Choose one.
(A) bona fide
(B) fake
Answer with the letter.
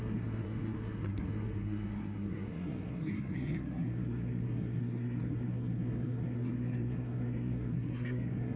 B